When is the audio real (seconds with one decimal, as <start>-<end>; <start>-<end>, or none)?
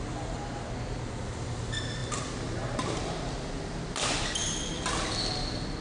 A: 0.0-5.8